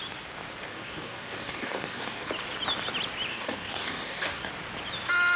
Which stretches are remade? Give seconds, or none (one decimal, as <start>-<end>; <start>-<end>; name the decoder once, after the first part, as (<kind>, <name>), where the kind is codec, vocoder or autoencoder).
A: 0.7-2.3 (codec, DAC); 3.3-4.5